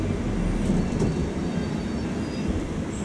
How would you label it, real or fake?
real